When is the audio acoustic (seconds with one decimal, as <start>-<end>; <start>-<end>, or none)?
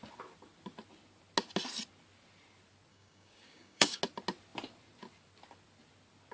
0.0-2.9; 4.0-6.3